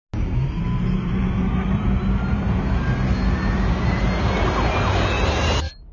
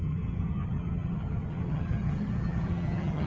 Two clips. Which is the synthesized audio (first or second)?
second